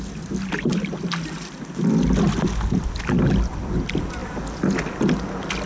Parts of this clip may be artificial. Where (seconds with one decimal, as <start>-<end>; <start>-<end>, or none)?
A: none